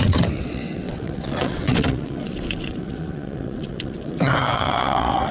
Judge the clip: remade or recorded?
remade